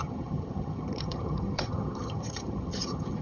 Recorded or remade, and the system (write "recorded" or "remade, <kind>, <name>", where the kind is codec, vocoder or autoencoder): remade, vocoder, HiFi-GAN